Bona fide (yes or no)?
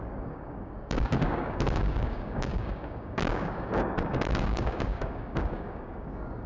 no